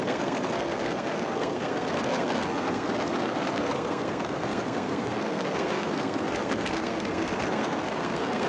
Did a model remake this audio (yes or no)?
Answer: yes